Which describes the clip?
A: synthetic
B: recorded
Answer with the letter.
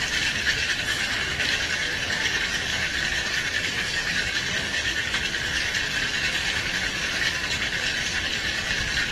A